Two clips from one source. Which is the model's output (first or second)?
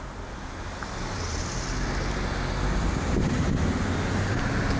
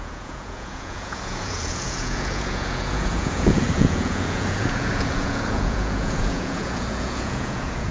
second